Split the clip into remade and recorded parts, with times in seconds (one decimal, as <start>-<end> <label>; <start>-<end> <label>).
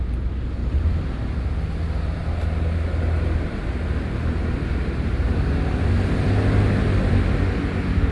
0.0-8.1 recorded